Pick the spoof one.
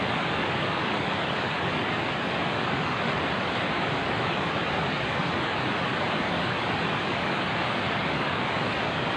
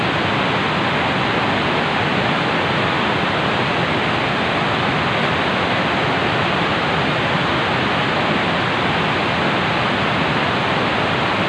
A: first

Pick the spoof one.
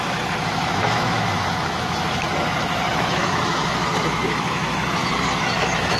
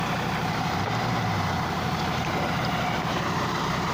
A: first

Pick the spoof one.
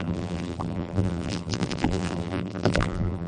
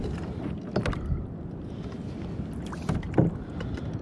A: first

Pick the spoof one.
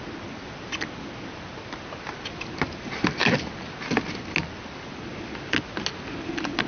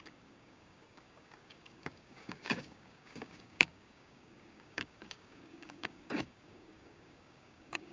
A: second